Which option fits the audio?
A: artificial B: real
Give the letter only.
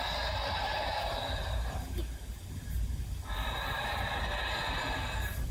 B